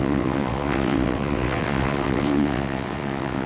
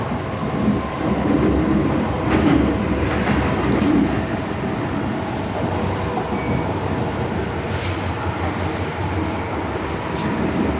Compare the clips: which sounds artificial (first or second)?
first